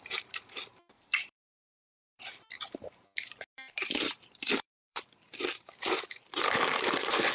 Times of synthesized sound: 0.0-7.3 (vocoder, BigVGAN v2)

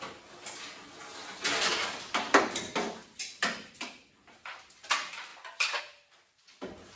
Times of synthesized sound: none

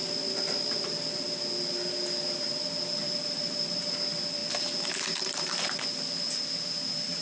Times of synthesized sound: none

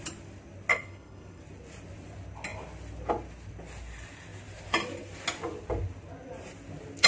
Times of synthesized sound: 0.7-1.4 (codec, HILCodec)

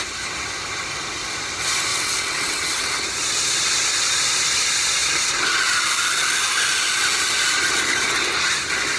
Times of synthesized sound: 1.9-2.9 (vocoder, WaveNeXt)

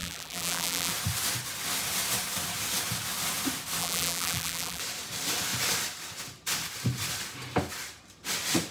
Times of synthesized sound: 0.0-0.9 (vocoder, BigVGAN v2); 3.8-4.8